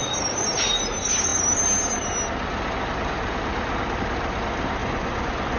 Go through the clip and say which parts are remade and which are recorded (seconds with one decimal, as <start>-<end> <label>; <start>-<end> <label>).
0.0-4.8 recorded; 4.8-5.6 remade